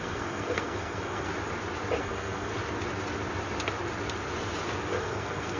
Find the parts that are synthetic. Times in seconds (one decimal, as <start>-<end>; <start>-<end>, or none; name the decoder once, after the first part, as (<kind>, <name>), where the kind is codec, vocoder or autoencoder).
0.0-1.3 (codec, SNAC); 2.0-2.5; 5.0-5.6